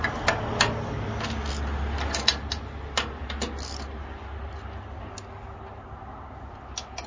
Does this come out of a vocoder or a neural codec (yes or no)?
no